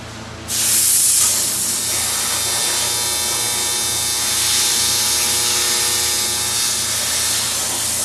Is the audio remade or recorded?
recorded